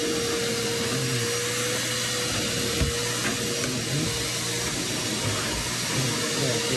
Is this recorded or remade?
recorded